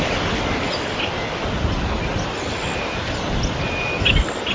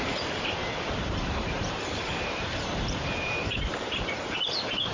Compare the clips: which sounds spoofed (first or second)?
second